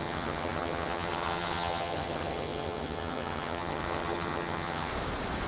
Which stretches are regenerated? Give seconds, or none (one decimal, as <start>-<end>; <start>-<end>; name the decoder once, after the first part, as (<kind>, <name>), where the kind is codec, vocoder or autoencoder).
0.0-4.9 (vocoder, HiFi-GAN)